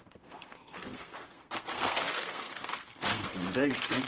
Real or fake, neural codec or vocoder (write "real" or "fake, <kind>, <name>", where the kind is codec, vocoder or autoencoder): fake, codec, SNAC